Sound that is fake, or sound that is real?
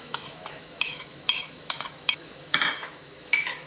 fake